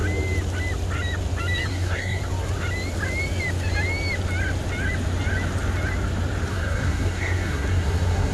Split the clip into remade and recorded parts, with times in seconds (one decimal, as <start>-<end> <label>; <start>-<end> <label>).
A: 0.0-1.7 recorded; 1.7-2.2 remade; 2.2-6.5 recorded; 6.5-8.3 remade